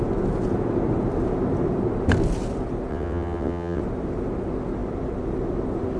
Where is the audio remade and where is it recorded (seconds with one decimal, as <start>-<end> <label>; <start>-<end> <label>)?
0.0-2.9 recorded; 2.9-3.8 remade; 3.8-6.0 recorded